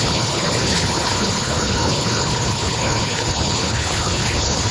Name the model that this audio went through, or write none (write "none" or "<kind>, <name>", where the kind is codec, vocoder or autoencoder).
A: codec, HILCodec